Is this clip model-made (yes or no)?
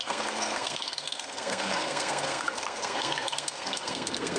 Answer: yes